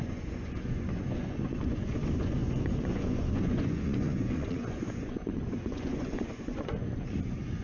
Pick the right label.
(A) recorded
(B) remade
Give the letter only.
B